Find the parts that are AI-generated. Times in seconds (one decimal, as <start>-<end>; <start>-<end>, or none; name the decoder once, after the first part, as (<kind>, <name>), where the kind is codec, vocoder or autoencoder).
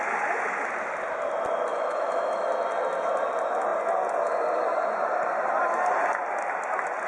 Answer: 1.7-2.5 (autoencoder, DAC-VAE)